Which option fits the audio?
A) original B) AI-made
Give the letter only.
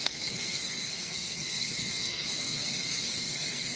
B